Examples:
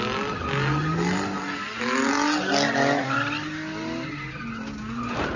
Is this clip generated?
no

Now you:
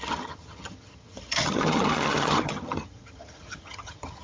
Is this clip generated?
yes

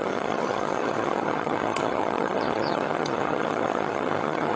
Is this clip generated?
yes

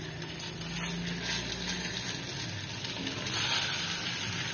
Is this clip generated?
no